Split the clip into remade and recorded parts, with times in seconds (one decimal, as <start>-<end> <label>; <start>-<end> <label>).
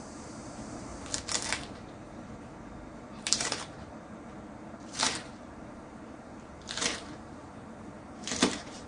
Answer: 0.0-0.9 remade; 0.9-1.6 recorded; 1.6-8.9 remade